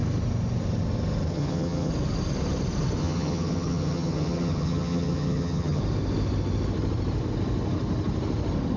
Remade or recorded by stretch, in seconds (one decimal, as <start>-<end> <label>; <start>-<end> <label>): 0.0-1.3 recorded; 1.3-1.9 remade; 1.9-3.0 recorded; 3.0-5.8 remade; 5.8-8.8 recorded